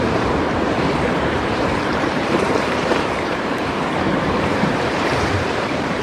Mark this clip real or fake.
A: fake